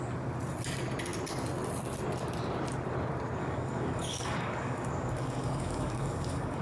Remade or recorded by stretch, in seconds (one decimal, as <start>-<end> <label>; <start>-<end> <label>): 0.0-3.4 recorded; 3.4-6.6 remade